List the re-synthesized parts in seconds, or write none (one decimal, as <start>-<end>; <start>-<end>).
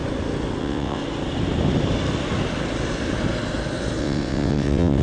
0.6-1.0; 4.0-5.0